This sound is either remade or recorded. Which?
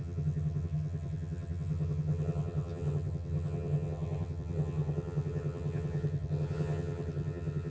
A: remade